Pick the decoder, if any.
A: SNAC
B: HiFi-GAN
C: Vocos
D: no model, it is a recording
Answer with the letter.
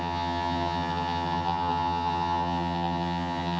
B